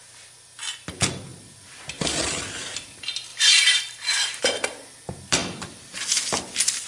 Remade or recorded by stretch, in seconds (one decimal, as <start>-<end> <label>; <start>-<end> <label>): 0.0-1.3 recorded; 1.3-1.8 remade; 1.8-3.3 recorded; 3.3-4.4 remade; 4.4-5.4 recorded; 5.4-5.9 remade; 5.9-6.9 recorded